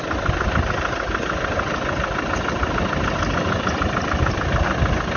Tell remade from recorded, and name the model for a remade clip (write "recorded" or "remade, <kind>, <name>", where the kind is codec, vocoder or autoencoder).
recorded